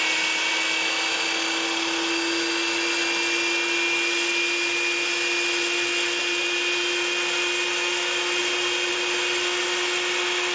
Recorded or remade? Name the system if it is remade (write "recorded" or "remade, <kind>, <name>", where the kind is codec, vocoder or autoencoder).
recorded